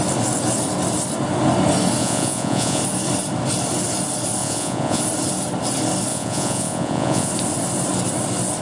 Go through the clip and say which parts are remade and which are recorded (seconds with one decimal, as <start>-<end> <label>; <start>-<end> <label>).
0.0-2.0 recorded; 2.0-2.8 remade; 2.8-4.4 recorded; 4.4-5.0 remade; 5.0-6.1 recorded; 6.1-7.3 remade; 7.3-8.6 recorded